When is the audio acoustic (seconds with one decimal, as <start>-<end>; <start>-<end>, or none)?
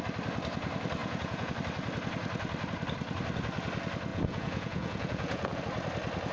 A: 0.0-1.0; 1.5-4.1; 5.6-6.3